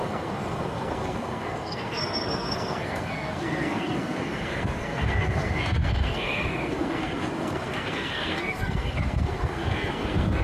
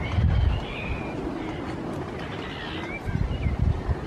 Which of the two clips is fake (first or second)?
first